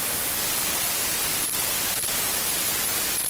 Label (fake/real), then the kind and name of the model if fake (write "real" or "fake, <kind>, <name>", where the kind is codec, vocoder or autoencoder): fake, vocoder, BigVGAN v2